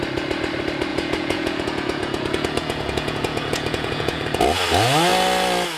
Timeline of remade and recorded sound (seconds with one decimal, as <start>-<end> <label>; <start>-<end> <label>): 0.0-0.9 recorded; 0.9-4.4 remade; 4.4-5.8 recorded